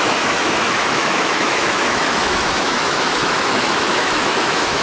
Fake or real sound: fake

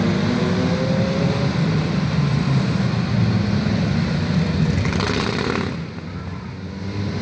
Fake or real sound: real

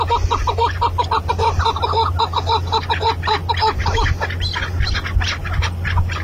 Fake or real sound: real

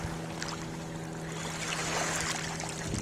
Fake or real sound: real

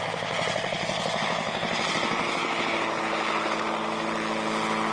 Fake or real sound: real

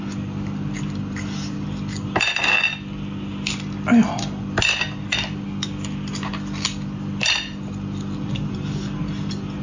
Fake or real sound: real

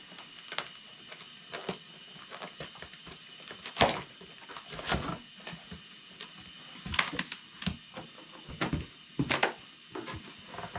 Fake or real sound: real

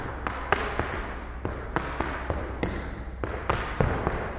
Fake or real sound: real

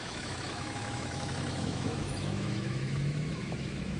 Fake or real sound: fake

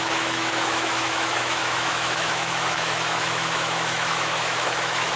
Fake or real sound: fake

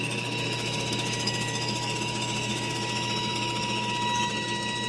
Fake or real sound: fake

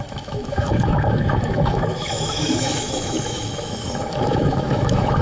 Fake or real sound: fake